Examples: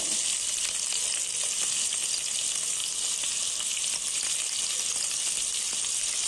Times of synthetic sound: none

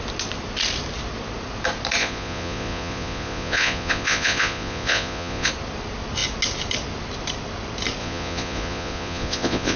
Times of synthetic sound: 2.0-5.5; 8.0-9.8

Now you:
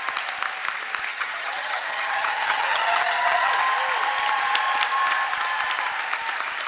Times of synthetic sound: 1.1-3.6

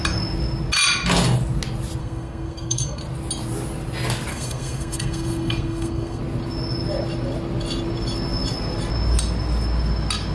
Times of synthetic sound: 2.0-3.0; 4.3-6.2

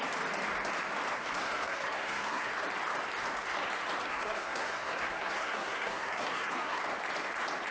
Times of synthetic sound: 1.2-2.5; 4.0-6.8

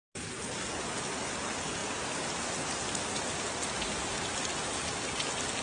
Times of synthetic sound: none

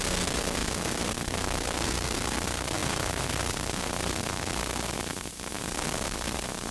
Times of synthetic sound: 0.0-6.7

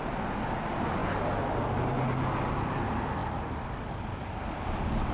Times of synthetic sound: 0.0-1.0; 2.5-5.1